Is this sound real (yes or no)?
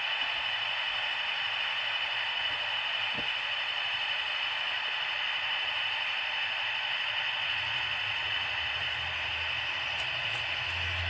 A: yes